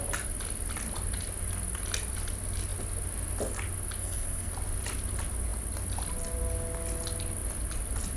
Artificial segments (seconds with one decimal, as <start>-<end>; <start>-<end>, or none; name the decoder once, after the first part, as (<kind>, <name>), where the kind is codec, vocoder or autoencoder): 4.0-4.5 (codec, SNAC)